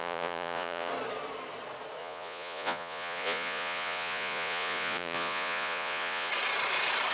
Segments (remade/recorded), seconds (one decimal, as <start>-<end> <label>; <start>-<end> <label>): 0.0-0.9 remade; 0.9-2.0 recorded; 2.0-6.3 remade; 6.3-7.1 recorded